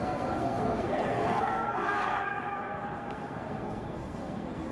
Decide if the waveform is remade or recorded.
remade